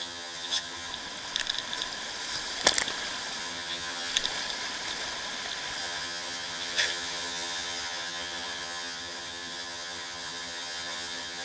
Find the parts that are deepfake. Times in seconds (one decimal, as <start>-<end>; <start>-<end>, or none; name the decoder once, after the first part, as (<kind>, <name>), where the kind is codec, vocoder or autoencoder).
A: 0.0-0.9 (vocoder, HiFi-GAN); 3.4-4.1; 5.8-11.4